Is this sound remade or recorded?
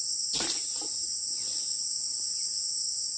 recorded